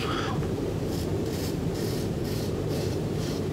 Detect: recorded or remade remade